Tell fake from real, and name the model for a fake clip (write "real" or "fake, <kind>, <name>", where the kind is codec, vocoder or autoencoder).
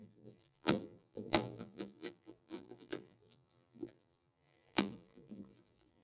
fake, vocoder, BigVGAN v2